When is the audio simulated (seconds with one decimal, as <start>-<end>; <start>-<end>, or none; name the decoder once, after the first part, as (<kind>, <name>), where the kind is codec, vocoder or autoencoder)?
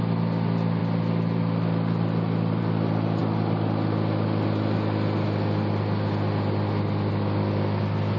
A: none